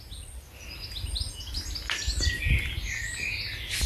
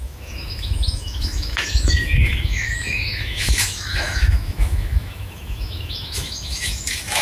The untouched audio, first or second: first